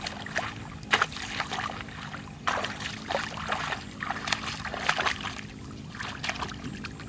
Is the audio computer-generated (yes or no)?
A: no